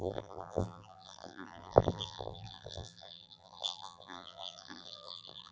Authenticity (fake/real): fake